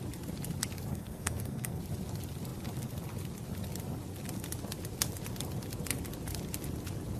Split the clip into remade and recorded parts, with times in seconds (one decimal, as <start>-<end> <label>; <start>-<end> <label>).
0.0-0.9 recorded; 0.9-1.8 remade; 1.8-7.2 recorded